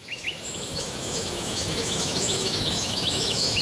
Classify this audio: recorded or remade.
remade